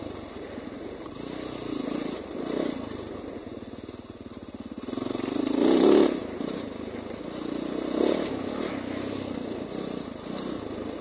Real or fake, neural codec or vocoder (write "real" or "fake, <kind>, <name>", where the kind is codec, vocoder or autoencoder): real